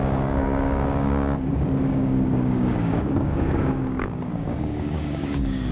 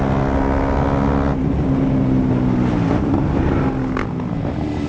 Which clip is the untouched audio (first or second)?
second